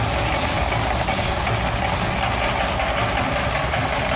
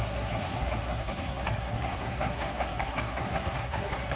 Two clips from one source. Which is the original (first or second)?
first